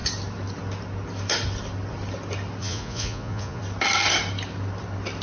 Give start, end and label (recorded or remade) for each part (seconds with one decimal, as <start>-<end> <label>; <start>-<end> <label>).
0.0-2.6 recorded; 2.6-3.6 remade; 3.6-5.2 recorded